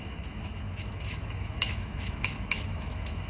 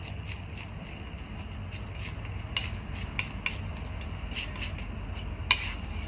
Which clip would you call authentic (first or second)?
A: second